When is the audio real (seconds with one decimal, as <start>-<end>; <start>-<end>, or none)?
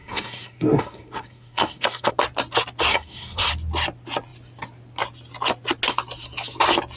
2.1-2.9; 3.5-7.0